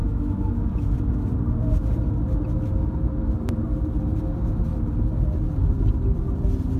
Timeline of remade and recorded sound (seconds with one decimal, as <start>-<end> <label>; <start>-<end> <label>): 0.0-0.5 remade; 0.5-6.8 recorded